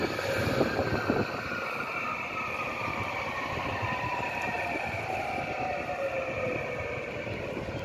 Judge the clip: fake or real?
real